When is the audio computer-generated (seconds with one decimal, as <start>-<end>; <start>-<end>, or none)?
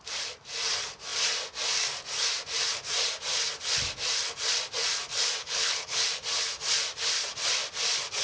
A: 5.4-6.0